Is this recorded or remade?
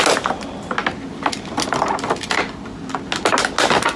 recorded